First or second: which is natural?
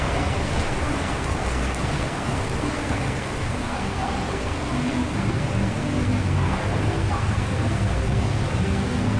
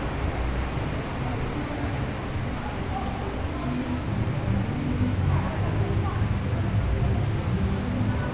second